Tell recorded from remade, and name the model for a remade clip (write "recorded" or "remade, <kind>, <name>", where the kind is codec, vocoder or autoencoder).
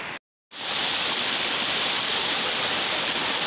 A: recorded